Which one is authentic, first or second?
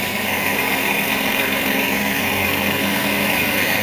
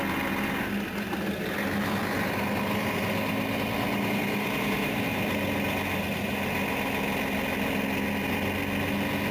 second